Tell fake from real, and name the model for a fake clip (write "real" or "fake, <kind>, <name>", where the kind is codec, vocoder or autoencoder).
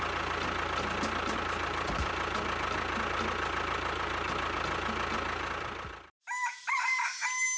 real